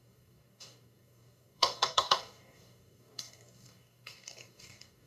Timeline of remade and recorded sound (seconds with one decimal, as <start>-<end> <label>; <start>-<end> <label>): 0.0-5.1 remade